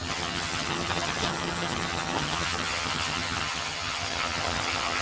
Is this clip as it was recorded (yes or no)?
no